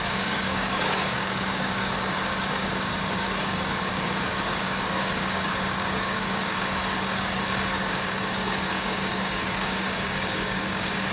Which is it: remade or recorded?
remade